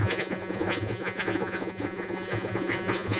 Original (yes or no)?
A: no